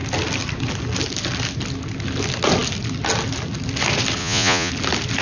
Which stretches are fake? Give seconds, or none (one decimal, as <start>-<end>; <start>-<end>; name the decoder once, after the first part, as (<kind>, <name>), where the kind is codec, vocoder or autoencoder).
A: 4.2-4.7 (vocoder, Vocos)

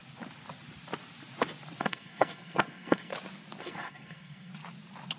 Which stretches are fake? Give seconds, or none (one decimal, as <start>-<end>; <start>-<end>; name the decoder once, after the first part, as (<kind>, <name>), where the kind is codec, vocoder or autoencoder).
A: 1.8-3.1 (codec, SNAC); 3.6-4.5

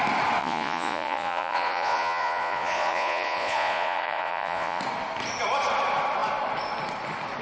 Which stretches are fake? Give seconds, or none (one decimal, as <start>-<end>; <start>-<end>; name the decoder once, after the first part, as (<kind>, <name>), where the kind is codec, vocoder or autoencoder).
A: 0.4-4.8 (vocoder, Vocos)

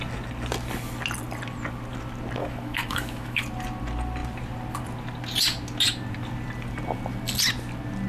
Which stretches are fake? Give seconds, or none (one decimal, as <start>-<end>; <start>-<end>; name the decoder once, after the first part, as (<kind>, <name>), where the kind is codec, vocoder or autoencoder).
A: 2.4-3.4 (autoencoder, DAC-VAE)

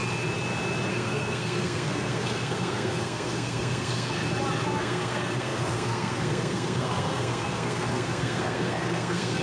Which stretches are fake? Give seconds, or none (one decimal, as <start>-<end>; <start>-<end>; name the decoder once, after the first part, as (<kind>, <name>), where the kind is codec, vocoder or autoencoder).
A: 0.9-4.2 (codec, SNAC); 4.8-9.4

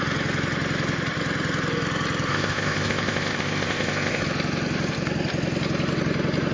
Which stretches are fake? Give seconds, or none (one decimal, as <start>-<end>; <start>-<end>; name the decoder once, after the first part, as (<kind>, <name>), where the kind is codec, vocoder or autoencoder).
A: 2.3-4.2 (codec, ZipCodec)

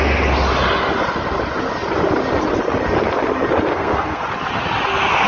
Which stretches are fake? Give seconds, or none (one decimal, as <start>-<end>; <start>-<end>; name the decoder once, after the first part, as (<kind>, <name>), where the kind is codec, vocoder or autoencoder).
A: 3.7-4.2 (codec, SNAC)

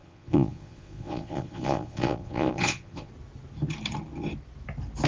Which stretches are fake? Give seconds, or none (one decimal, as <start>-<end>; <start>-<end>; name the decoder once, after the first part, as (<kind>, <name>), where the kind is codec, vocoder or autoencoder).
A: 0.0-3.1 (vocoder, Vocos)